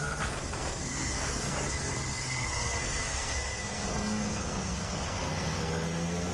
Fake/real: fake